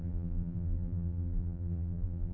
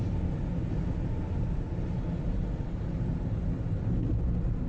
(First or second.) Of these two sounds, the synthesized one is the first